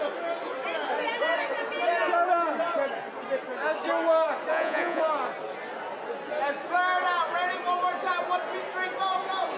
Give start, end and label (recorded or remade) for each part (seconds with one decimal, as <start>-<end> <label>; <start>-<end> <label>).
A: 0.0-4.5 recorded; 4.5-5.0 remade; 5.0-9.6 recorded

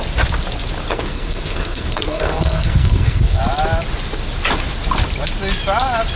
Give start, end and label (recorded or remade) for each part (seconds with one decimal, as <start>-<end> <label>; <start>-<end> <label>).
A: 0.0-0.9 recorded; 0.9-3.4 remade; 3.4-6.2 recorded

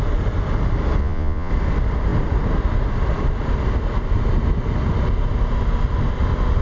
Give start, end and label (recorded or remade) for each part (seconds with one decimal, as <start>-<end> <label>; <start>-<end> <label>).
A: 0.0-1.0 recorded; 1.0-1.5 remade; 1.5-6.6 recorded

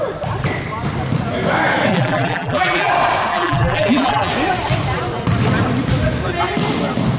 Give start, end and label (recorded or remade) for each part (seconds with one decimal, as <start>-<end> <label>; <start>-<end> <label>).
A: 0.0-1.9 recorded; 1.9-2.9 remade; 2.9-3.3 recorded; 3.3-4.3 remade; 4.3-7.2 recorded

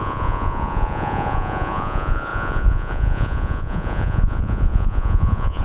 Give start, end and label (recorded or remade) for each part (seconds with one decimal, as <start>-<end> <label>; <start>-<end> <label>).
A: 0.0-5.6 remade

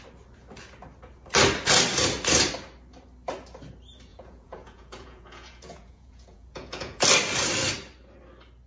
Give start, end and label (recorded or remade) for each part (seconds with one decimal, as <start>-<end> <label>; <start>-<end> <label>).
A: 0.0-4.1 recorded; 4.1-7.0 remade; 7.0-8.7 recorded

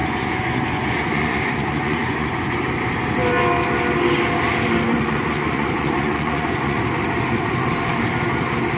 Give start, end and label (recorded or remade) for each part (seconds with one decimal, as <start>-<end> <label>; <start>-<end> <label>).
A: 0.0-2.6 remade; 2.6-4.9 recorded; 4.9-6.8 remade; 6.8-8.8 recorded